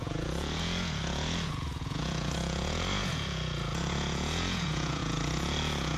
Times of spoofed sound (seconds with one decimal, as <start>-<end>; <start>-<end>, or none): 0.0-6.0